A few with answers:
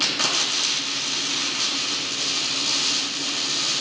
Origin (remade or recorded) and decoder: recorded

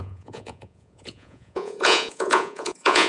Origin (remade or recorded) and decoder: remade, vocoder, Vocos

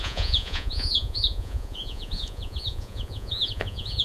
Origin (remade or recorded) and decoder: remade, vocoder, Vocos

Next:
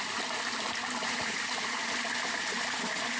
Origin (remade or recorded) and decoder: recorded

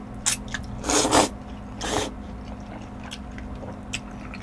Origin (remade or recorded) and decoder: recorded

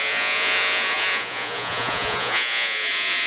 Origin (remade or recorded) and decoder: remade, vocoder, Vocos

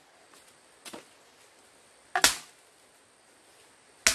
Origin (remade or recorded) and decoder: recorded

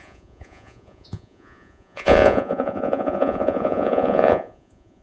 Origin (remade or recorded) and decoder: remade, vocoder, Vocos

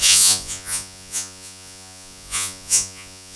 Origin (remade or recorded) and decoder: remade, vocoder, Vocos